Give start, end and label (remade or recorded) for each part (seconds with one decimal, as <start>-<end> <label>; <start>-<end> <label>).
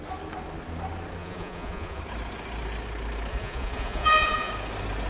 0.0-1.2 recorded; 1.2-2.0 remade; 2.0-3.3 recorded; 3.3-4.5 remade; 4.5-5.1 recorded